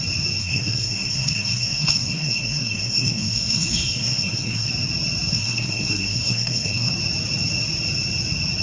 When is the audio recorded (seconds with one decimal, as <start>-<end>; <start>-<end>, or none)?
0.0-0.4; 4.7-5.3; 6.9-8.6